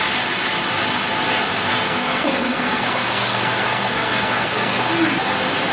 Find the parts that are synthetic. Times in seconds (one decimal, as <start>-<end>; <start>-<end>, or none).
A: 1.5-4.9